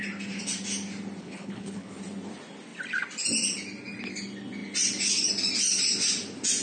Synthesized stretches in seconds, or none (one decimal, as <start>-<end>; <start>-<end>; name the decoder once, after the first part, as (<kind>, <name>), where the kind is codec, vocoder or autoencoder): 1.2-2.0 (codec, HILCodec)